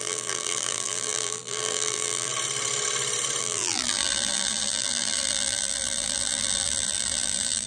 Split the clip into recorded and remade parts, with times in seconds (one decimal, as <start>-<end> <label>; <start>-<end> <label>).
0.0-2.3 remade; 2.3-3.4 recorded; 3.4-7.7 remade